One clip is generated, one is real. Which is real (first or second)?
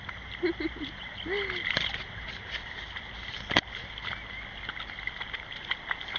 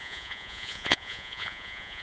first